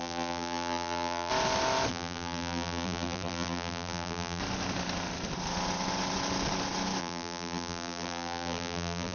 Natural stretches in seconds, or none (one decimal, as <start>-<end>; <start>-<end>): 1.3-1.9; 4.4-7.0